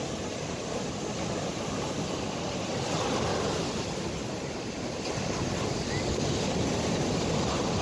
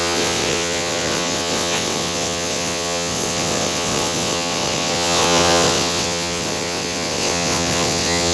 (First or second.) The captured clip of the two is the first